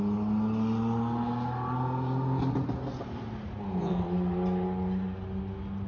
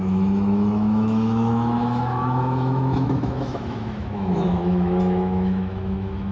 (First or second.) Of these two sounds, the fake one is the second